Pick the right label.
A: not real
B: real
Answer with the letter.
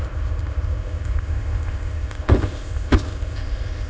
A